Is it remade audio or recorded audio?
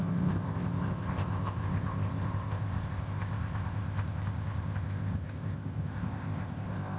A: remade